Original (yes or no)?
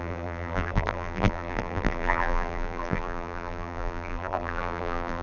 no